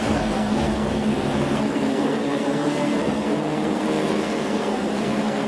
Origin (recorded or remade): remade